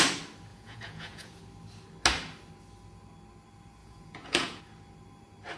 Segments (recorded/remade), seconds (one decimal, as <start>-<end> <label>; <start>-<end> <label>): 0.0-0.5 recorded; 0.5-1.4 remade; 1.4-3.8 recorded; 3.8-4.6 remade; 4.6-5.6 recorded

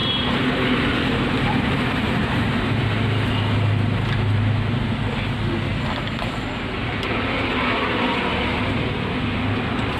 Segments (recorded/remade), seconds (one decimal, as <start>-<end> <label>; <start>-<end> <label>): 0.0-2.8 remade; 2.8-10.0 recorded